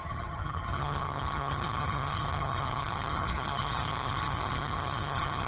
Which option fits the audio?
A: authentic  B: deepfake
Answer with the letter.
B